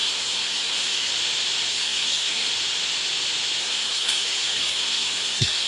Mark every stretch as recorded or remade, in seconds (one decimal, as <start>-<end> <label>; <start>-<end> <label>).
0.0-1.1 remade; 1.1-1.7 recorded; 1.7-2.5 remade; 2.5-3.6 recorded; 3.6-5.7 remade